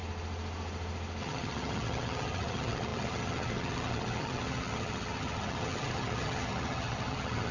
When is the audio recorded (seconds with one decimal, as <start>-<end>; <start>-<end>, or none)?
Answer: 0.0-1.2